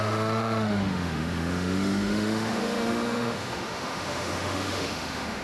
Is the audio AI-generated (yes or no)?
yes